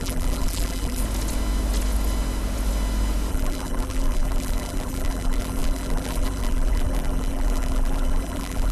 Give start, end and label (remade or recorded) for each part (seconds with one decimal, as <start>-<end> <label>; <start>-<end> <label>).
0.0-1.0 remade; 1.0-3.3 recorded; 3.3-8.7 remade